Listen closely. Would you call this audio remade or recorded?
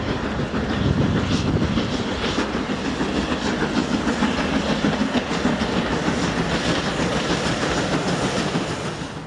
recorded